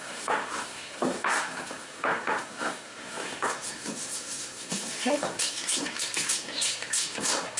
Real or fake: fake